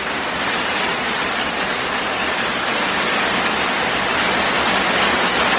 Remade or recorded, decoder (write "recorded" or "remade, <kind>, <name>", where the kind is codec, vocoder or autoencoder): recorded